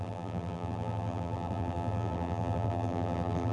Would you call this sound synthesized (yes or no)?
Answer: yes